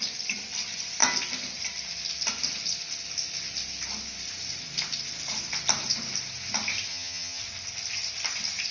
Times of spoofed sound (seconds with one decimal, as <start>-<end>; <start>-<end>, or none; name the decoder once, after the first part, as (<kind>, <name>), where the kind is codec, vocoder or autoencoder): 6.9-7.4 (vocoder, HiFi-GAN)